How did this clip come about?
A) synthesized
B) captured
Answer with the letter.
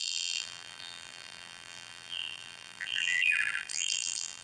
A